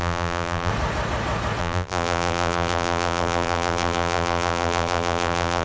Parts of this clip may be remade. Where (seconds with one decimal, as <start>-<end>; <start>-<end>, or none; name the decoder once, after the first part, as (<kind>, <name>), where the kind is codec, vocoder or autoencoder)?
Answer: 0.0-0.7 (vocoder, BigVGAN v2); 1.6-5.6